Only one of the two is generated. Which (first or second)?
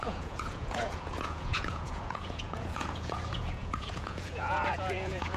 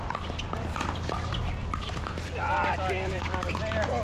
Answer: first